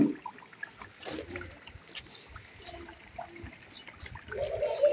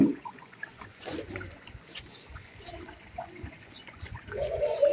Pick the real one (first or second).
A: first